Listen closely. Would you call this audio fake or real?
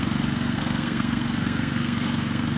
fake